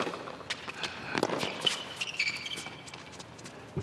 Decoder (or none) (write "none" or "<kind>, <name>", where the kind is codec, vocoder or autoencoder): none